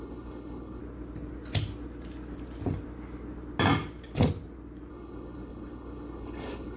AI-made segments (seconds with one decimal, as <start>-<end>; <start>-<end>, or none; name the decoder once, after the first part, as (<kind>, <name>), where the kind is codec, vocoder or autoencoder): 0.0-0.8 (codec, HILCodec); 4.9-6.8